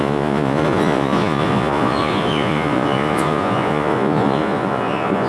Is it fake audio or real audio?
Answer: fake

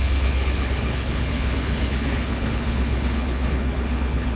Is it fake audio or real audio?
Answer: fake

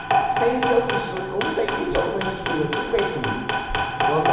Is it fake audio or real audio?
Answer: real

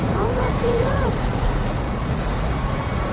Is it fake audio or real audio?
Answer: fake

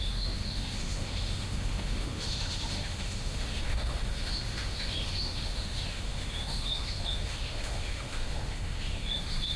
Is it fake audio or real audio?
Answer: fake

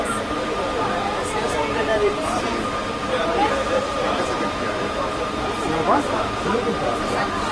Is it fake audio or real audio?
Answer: fake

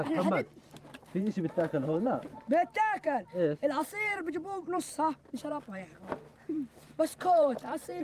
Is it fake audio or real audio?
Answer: fake